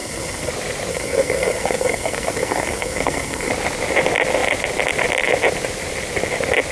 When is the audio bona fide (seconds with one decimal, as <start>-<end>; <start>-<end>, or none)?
0.5-0.9; 3.5-6.7